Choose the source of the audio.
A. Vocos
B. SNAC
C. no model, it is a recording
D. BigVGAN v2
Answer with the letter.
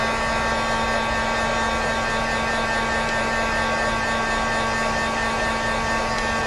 C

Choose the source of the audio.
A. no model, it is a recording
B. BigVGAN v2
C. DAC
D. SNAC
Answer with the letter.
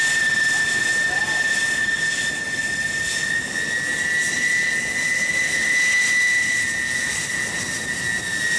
A